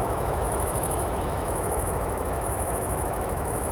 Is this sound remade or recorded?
remade